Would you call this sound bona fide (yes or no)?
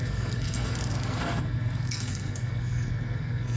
no